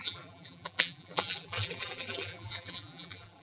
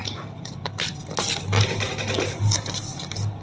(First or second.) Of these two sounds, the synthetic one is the first